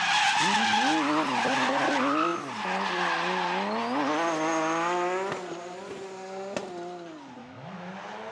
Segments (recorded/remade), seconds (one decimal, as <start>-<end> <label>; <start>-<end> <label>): 0.0-7.4 recorded; 7.4-7.9 remade; 7.9-8.3 recorded

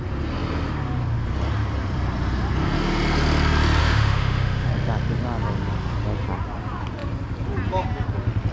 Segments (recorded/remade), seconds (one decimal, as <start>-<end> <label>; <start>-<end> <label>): 0.0-3.8 recorded; 3.8-4.7 remade; 4.7-8.5 recorded

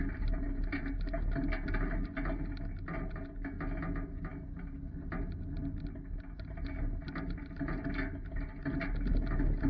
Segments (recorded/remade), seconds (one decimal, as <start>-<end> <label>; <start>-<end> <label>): 0.0-9.7 recorded

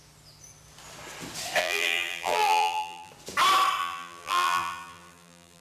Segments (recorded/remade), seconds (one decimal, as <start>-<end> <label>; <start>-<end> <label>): 0.0-1.6 recorded; 1.6-3.1 remade; 3.1-3.8 recorded; 3.8-5.6 remade

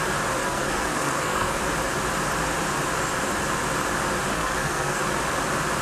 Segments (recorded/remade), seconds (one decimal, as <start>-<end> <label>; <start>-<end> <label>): 0.0-0.4 recorded; 0.4-1.6 remade; 1.6-4.3 recorded; 4.3-5.0 remade; 5.0-5.8 recorded

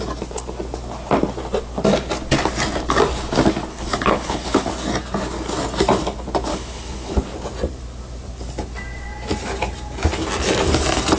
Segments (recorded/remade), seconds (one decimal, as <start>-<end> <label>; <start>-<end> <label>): 0.0-3.7 recorded; 3.7-4.7 remade; 4.7-6.5 recorded; 6.5-7.1 remade; 7.1-11.2 recorded